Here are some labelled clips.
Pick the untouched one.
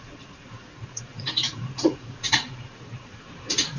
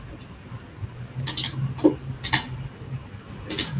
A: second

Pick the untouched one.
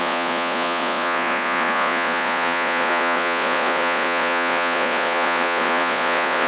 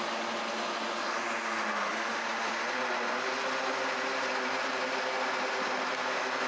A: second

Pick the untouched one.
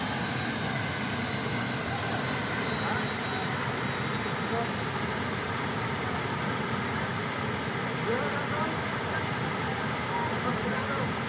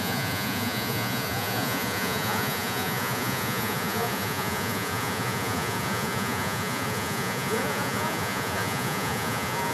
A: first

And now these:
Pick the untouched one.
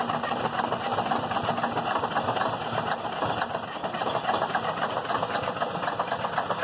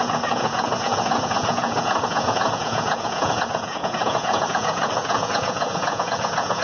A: first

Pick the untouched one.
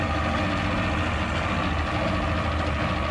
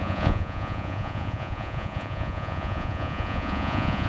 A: first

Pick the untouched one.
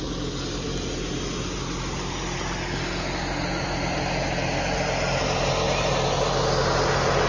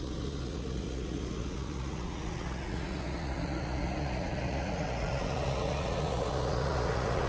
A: first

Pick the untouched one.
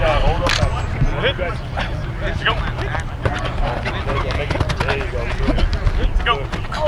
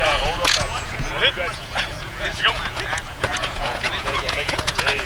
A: first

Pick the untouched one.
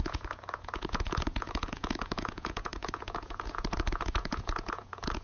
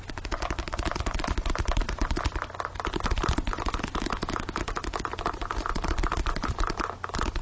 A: second